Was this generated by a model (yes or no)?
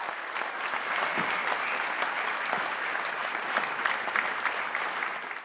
no